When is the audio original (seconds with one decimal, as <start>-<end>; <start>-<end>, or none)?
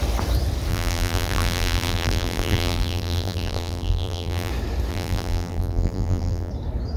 0.0-0.7; 4.5-4.9; 6.5-7.0